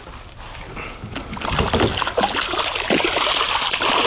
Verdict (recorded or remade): recorded